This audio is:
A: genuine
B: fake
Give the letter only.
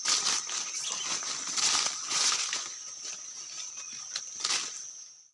A